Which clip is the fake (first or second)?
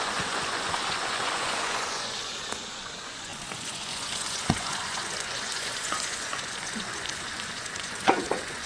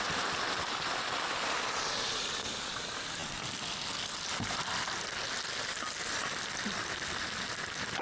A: first